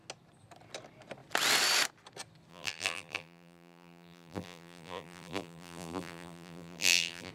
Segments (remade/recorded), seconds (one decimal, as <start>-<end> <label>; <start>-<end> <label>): 0.0-2.5 recorded; 2.5-7.3 remade